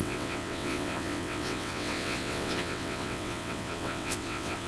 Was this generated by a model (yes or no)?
yes